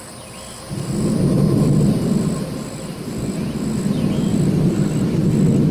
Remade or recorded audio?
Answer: recorded